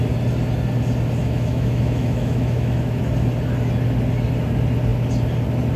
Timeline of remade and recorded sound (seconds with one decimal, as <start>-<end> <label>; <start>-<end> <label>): 0.0-1.2 recorded; 1.2-3.0 remade; 3.0-5.8 recorded